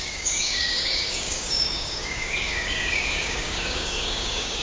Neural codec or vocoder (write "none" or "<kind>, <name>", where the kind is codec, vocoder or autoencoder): codec, DAC